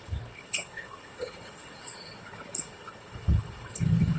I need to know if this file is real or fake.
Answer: fake